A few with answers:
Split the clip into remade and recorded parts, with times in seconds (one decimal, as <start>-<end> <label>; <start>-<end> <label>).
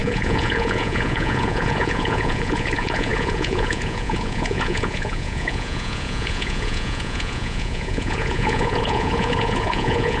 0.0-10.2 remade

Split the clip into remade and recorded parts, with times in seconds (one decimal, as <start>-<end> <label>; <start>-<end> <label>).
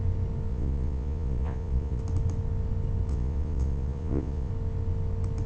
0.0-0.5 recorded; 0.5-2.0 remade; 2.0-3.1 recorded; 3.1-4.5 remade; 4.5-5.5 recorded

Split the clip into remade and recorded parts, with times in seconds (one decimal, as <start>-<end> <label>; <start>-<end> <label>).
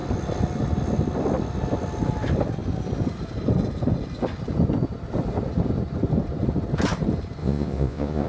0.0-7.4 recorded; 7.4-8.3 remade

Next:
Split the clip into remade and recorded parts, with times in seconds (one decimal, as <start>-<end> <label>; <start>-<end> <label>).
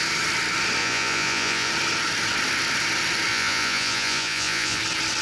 0.0-0.8 recorded; 0.8-1.7 remade; 1.7-3.3 recorded; 3.3-4.8 remade; 4.8-5.2 recorded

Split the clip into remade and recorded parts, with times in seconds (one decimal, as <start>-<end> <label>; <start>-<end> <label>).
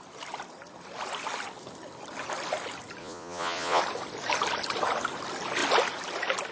0.0-3.0 recorded; 3.0-3.8 remade; 3.8-6.5 recorded